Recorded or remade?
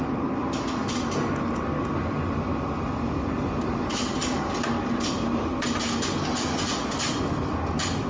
recorded